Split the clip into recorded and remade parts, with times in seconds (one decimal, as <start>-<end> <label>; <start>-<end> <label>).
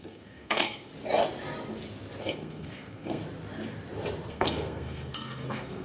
0.0-0.9 remade; 0.9-2.2 recorded; 2.2-3.2 remade; 3.2-4.3 recorded; 4.3-5.8 remade